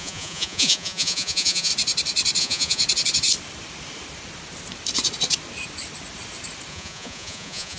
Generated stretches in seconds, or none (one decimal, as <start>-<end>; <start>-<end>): 0.0-1.7; 2.4-2.8; 6.7-7.8